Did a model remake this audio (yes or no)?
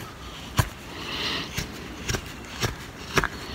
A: no